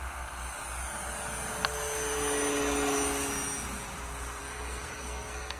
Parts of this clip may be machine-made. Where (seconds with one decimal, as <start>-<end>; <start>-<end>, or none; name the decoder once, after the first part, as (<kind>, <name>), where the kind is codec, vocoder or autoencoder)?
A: 4.4-5.6 (codec, SNAC)